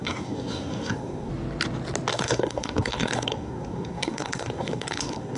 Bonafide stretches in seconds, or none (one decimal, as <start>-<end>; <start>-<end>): 1.3-2.1